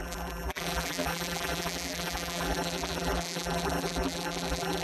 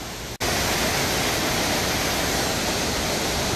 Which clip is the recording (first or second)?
second